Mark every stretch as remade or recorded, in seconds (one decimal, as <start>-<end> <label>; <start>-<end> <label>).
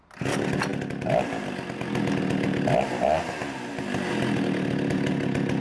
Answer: 0.0-5.6 recorded